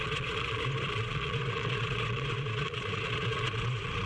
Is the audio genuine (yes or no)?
no